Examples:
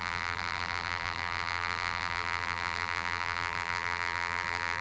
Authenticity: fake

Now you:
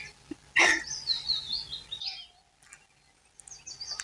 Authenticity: real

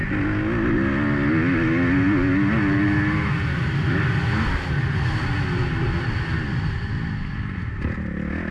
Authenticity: real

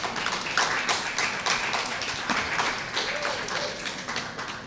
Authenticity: real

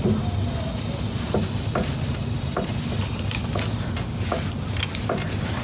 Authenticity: real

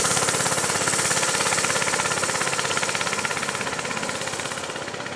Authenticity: real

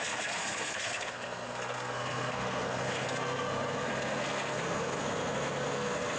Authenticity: fake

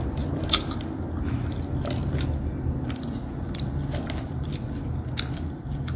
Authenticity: real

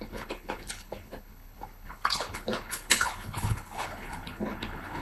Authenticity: fake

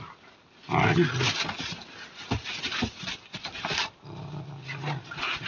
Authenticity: real